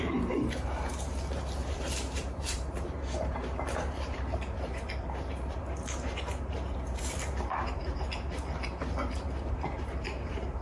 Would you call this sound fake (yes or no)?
yes